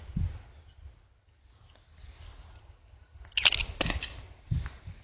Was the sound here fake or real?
real